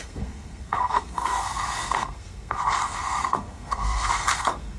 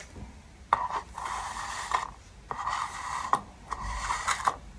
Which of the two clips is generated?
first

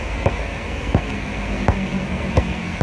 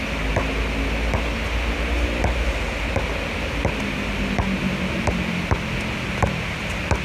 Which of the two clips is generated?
first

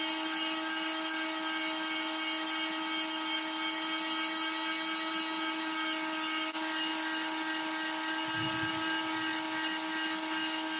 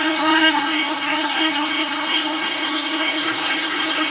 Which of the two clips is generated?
second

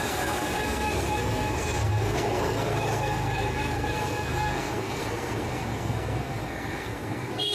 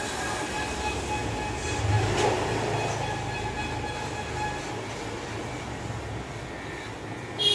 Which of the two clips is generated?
first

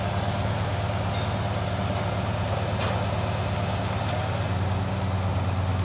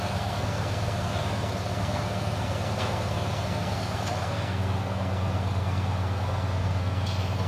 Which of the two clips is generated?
second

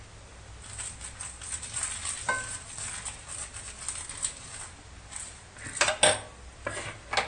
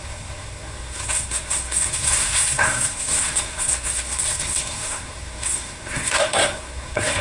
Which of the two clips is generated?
second